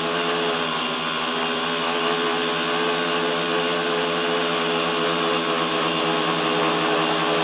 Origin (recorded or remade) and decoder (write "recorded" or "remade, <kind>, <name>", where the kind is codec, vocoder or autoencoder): recorded